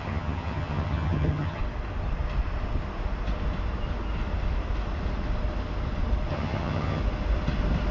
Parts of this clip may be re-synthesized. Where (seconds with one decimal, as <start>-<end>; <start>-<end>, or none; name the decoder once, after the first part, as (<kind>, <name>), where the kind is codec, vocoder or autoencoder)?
0.0-1.6 (vocoder, HiFi-GAN); 6.3-7.0